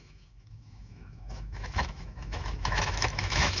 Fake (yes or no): yes